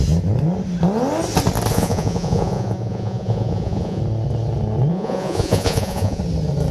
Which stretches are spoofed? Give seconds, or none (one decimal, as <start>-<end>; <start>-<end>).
1.7-4.0; 4.9-6.2